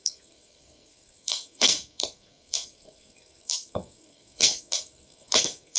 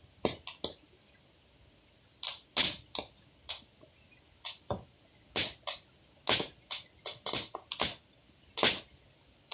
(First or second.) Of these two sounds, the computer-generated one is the first